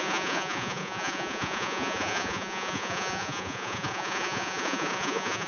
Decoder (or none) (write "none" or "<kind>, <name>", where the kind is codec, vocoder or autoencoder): vocoder, Vocos